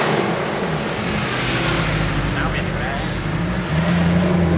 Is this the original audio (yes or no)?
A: yes